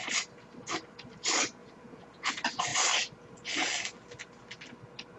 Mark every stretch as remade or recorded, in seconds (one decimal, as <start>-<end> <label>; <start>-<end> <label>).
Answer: 0.0-1.6 recorded; 1.6-2.3 remade; 2.3-5.2 recorded

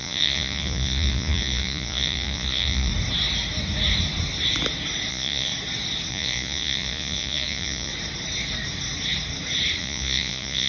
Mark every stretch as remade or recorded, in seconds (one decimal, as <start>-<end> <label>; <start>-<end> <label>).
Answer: 0.0-2.9 remade; 2.9-5.1 recorded; 5.1-5.5 remade; 5.5-6.1 recorded; 6.1-7.9 remade; 7.9-9.8 recorded; 9.8-10.7 remade

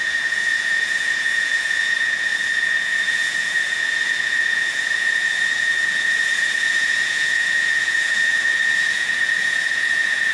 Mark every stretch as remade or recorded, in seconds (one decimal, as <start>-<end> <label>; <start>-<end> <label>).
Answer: 0.0-10.3 remade

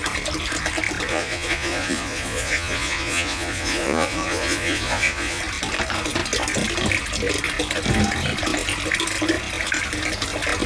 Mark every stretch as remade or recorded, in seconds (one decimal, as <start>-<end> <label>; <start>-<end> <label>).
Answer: 0.0-1.1 recorded; 1.1-5.4 remade; 5.4-10.7 recorded

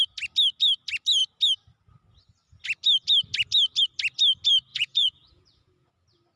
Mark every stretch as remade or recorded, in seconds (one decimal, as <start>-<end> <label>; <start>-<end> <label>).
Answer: 0.0-4.7 recorded; 4.7-5.9 remade; 5.9-6.4 recorded

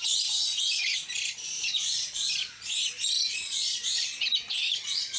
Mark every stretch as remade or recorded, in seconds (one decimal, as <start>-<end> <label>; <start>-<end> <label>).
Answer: 0.0-5.2 remade

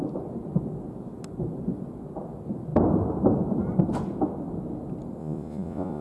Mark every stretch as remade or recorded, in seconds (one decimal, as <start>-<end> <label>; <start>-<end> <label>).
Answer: 0.0-5.2 recorded; 5.2-6.0 remade

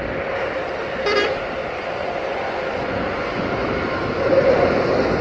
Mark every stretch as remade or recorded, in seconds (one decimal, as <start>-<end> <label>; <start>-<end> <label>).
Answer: 0.0-1.6 recorded; 1.6-3.5 remade; 3.5-5.2 recorded